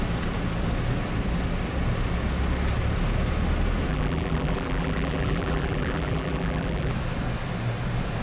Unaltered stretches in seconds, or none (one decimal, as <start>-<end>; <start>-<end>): 0.0-3.9; 6.9-8.2